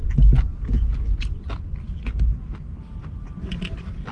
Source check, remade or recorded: recorded